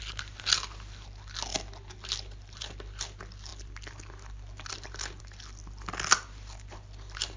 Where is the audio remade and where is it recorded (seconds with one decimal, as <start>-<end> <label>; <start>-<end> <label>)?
0.0-7.4 recorded